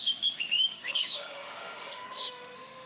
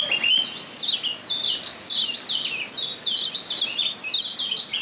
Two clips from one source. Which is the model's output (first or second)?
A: first